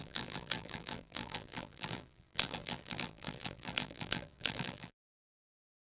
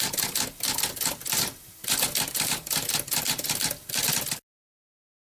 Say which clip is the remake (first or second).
first